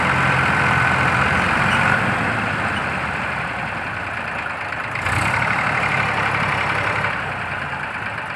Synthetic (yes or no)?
yes